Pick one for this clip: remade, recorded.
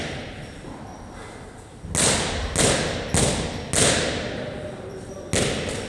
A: recorded